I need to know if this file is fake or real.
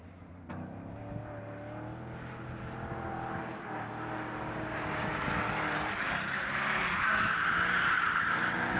real